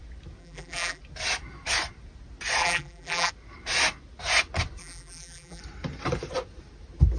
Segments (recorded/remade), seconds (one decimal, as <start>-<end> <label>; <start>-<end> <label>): 0.0-0.4 recorded; 0.4-1.0 remade; 1.0-2.6 recorded; 2.6-3.3 remade; 3.3-4.8 recorded; 4.8-5.6 remade; 5.6-7.2 recorded

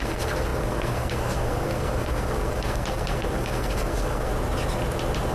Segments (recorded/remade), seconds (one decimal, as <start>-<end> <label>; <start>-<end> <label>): 0.0-4.3 remade; 4.3-5.3 recorded

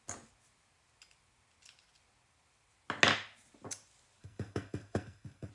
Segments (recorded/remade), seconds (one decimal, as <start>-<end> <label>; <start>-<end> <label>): 0.0-4.2 recorded; 4.2-5.5 remade

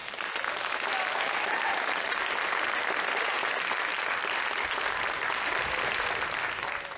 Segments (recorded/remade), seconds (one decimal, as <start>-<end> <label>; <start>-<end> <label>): 0.0-7.0 recorded

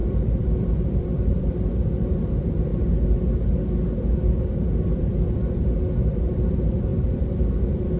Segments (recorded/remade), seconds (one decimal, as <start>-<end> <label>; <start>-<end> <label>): 0.0-2.7 remade; 2.7-4.7 recorded; 4.7-8.0 remade

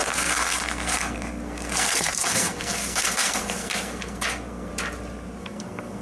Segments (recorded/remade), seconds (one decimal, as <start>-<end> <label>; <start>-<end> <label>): 0.0-4.7 remade; 4.7-5.4 recorded; 5.4-6.0 remade

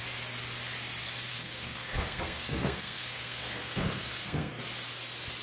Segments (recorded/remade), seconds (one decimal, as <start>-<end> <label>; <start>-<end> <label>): 0.0-1.3 recorded; 1.3-4.5 remade; 4.5-5.4 recorded

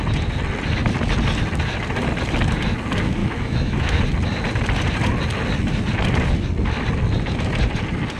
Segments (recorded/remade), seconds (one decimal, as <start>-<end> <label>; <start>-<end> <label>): 0.0-3.2 recorded; 3.2-4.0 remade; 4.0-8.2 recorded